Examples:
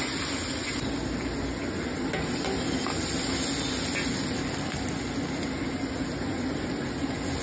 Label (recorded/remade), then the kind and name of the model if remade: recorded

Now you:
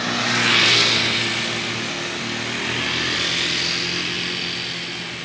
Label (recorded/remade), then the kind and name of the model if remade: recorded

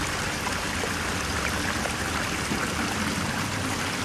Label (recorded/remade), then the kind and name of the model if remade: recorded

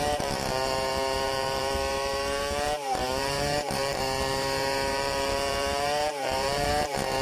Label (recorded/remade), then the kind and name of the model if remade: remade, vocoder, BigVGAN v2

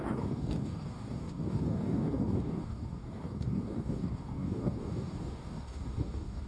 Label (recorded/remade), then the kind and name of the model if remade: remade, codec, DAC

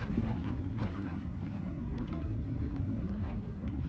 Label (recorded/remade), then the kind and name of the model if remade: remade, codec, SNAC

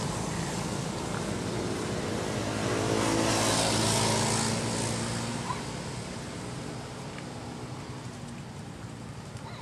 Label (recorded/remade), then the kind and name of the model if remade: recorded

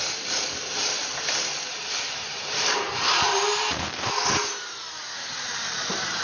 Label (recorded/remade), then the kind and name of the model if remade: remade, vocoder, BigVGAN v2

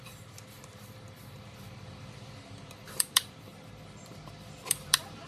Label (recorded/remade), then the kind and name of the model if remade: remade, vocoder, BigVGAN v2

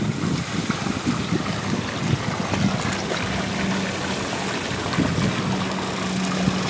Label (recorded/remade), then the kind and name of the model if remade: recorded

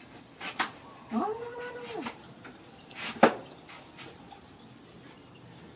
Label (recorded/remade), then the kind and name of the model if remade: recorded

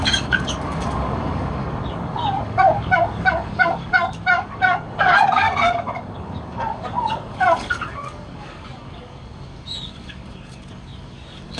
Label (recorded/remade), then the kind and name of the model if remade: remade, codec, DAC